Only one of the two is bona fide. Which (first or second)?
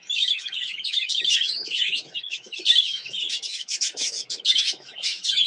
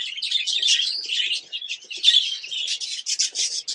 second